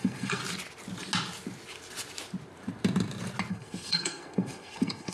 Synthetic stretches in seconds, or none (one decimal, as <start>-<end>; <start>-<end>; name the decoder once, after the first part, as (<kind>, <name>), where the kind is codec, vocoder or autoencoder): 0.0-0.4 (codec, SNAC); 3.5-5.1